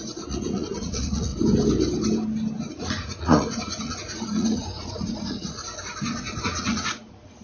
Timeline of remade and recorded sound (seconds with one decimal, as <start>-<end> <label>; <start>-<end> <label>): 0.0-1.3 remade; 1.3-2.8 recorded; 2.8-5.6 remade; 5.6-6.4 recorded; 6.4-7.4 remade